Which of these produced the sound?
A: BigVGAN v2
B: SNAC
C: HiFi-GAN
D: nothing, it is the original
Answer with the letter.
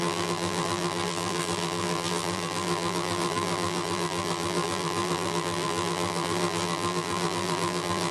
A